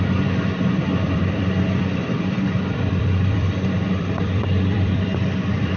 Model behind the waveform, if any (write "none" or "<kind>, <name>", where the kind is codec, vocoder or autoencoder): vocoder, BigVGAN v2